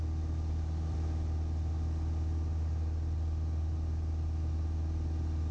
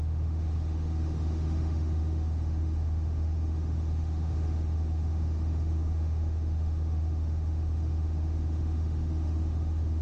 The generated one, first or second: second